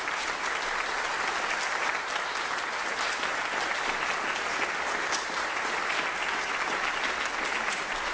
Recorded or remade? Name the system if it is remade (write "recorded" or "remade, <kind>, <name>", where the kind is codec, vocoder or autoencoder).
recorded